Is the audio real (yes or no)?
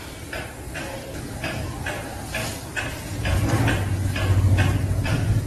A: yes